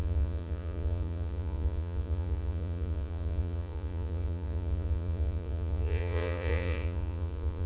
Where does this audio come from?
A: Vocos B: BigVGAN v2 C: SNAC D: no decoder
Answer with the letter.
A